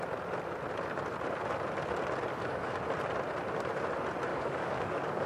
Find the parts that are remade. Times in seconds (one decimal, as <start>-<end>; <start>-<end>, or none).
2.3-2.8; 4.3-5.3